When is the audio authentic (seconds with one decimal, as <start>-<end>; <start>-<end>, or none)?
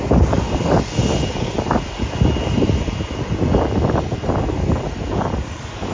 0.0-5.9